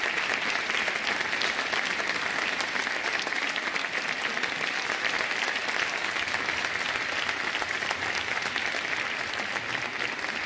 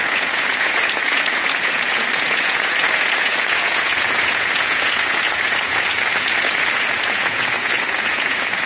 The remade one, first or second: second